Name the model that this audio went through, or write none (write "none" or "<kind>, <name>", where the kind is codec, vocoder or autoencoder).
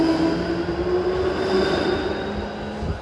none